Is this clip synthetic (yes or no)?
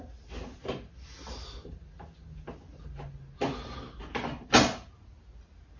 no